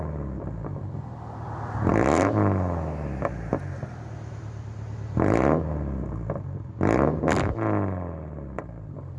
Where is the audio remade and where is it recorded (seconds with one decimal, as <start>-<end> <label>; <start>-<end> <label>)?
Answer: 0.0-9.2 recorded

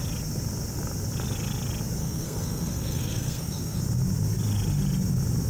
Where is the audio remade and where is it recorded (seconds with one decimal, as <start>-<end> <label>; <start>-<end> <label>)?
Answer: 0.0-2.0 recorded; 2.0-3.8 remade; 3.8-5.5 recorded

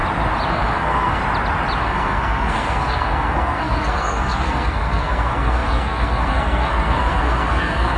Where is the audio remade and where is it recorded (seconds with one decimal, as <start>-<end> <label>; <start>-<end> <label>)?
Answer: 0.0-0.5 recorded; 0.5-1.2 remade; 1.2-1.8 recorded; 1.8-8.0 remade

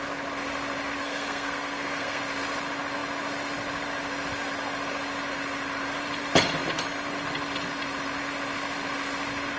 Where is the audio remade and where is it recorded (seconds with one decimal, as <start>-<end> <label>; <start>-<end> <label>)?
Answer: 0.0-1.0 recorded; 1.0-2.2 remade; 2.2-9.6 recorded

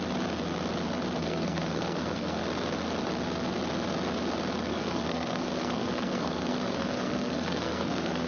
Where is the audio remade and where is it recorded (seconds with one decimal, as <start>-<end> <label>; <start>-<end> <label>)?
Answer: 0.0-1.2 recorded; 1.2-2.4 remade; 2.4-4.7 recorded; 4.7-8.3 remade

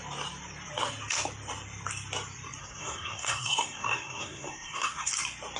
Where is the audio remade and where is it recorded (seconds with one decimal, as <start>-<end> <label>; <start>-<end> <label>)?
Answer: 0.0-2.6 recorded; 2.6-5.1 remade; 5.1-5.6 recorded

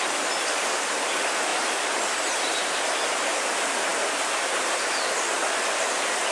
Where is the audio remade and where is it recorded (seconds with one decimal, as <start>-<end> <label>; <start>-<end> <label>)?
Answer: 0.0-6.3 recorded